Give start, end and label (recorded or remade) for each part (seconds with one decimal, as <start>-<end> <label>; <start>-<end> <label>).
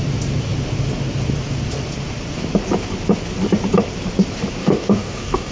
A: 0.0-4.6 recorded; 4.6-5.5 remade